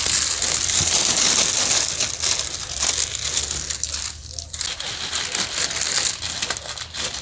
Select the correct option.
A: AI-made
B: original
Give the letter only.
B